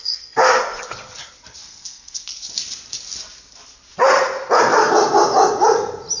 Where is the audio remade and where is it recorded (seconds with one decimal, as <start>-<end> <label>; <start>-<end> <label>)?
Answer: 0.0-0.6 remade; 0.6-1.6 recorded; 1.6-2.2 remade; 2.2-6.2 recorded